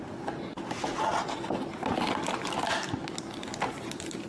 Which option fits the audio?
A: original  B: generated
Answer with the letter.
A